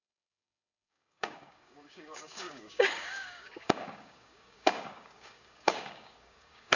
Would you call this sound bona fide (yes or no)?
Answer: no